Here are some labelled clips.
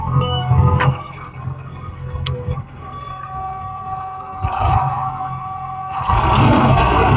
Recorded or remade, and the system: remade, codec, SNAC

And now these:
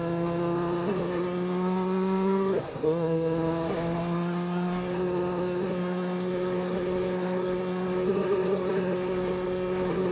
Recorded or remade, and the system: remade, codec, SNAC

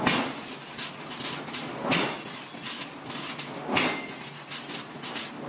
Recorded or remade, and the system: recorded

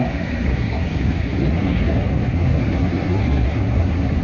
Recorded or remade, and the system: remade, codec, SNAC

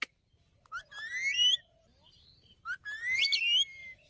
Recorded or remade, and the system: recorded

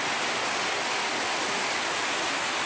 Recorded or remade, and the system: recorded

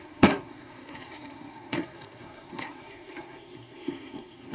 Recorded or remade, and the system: remade, codec, SNAC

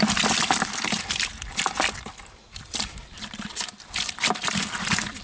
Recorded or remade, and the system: recorded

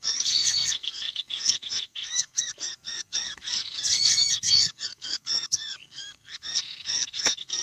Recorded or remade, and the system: remade, codec, SNAC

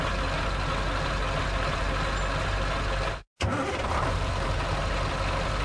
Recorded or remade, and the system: recorded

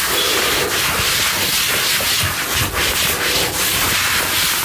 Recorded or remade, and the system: recorded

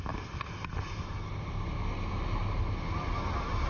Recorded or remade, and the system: recorded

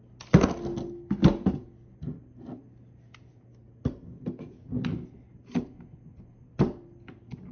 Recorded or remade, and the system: recorded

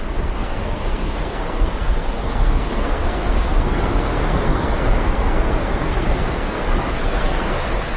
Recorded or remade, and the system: remade, codec, SNAC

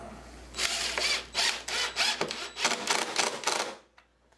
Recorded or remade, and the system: recorded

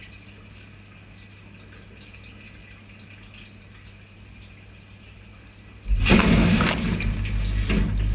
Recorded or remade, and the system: recorded